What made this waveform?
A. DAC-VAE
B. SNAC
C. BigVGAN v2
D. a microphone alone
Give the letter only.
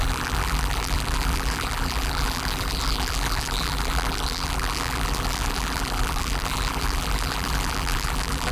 C